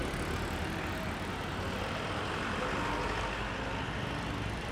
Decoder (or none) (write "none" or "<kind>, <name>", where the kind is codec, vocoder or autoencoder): none